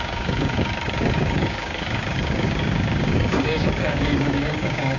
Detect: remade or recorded remade